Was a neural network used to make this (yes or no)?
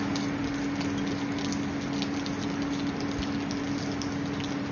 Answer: no